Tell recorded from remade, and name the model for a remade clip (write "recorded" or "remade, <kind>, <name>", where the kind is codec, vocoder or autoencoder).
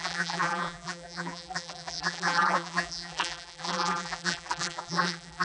remade, vocoder, BigVGAN v2